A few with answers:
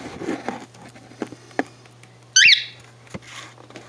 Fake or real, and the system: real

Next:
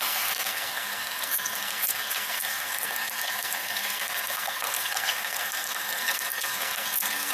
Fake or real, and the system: fake, codec, SNAC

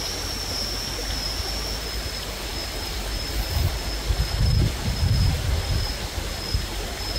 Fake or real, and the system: real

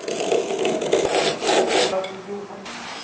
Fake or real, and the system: real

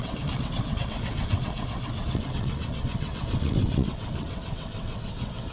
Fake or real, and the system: fake, vocoder, WaveNeXt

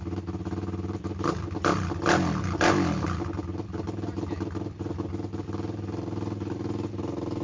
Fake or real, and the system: real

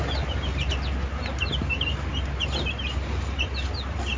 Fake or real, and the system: real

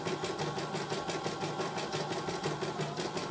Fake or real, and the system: real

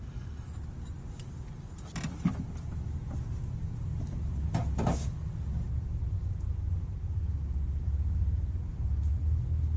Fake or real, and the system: real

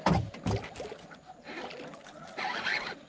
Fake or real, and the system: real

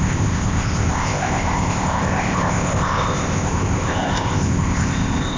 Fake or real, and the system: fake, codec, ZipCodec